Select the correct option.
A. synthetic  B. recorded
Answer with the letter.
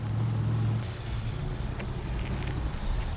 B